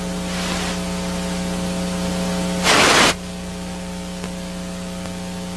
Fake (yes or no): no